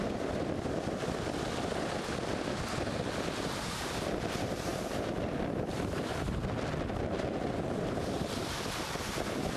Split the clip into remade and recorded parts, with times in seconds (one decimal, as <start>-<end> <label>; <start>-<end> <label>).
0.0-9.6 remade

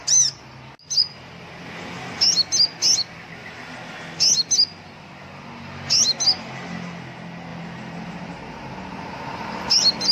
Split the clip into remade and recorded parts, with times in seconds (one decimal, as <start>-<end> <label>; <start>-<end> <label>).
0.0-10.1 recorded

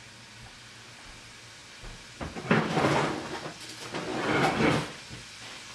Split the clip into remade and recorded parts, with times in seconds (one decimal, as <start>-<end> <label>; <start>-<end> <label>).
0.0-5.7 recorded

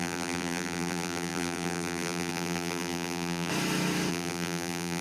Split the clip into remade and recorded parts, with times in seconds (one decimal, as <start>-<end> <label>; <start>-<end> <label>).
0.0-3.5 remade; 3.5-4.1 recorded; 4.1-5.0 remade

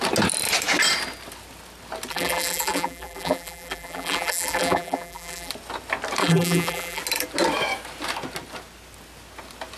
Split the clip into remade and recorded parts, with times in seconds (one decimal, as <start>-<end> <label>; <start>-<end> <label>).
0.0-2.1 recorded; 2.1-5.5 remade; 5.5-6.2 recorded; 6.2-7.0 remade; 7.0-9.8 recorded